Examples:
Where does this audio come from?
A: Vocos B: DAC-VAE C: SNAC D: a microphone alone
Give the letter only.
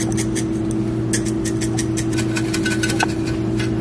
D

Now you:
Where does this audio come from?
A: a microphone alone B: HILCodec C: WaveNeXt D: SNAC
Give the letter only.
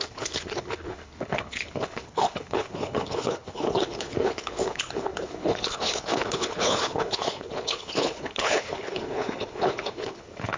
B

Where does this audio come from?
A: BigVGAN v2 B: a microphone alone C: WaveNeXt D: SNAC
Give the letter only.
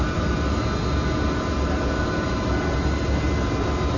B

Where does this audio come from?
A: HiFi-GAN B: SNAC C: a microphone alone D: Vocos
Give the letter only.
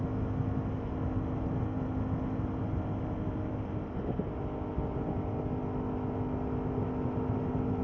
C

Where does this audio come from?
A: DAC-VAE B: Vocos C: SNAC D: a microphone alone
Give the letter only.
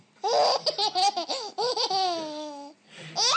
D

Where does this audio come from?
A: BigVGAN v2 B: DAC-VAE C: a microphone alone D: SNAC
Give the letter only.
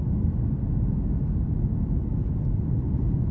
C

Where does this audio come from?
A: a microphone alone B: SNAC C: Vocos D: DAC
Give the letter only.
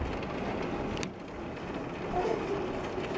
A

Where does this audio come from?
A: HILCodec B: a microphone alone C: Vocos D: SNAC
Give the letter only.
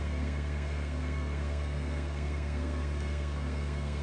D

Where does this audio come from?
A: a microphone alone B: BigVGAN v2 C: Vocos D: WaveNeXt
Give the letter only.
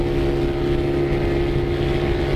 A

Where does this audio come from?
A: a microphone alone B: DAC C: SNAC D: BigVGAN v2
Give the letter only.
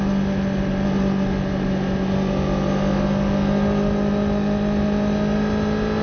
A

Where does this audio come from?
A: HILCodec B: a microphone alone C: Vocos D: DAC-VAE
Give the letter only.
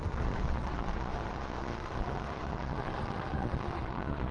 C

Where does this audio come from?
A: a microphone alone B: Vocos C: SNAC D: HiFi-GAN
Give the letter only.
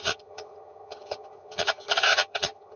D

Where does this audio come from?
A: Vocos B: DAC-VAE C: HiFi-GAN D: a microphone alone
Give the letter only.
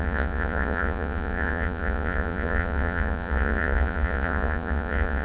A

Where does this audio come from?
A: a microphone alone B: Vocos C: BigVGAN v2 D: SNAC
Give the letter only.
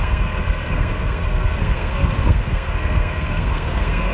D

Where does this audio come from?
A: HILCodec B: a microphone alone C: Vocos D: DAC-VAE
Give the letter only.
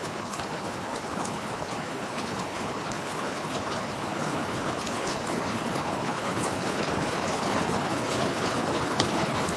A